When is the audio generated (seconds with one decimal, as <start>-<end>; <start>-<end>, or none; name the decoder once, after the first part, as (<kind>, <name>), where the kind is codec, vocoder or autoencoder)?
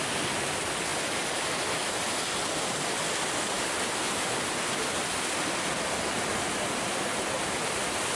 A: none